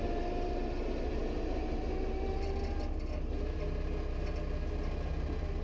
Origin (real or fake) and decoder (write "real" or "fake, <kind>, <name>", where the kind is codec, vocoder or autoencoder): real